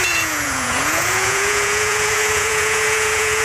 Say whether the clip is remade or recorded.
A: remade